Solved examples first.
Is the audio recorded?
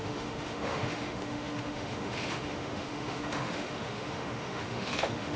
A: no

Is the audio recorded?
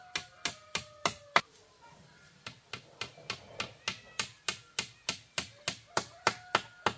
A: yes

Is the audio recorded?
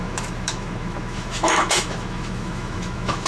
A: no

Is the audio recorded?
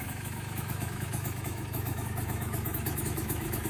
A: no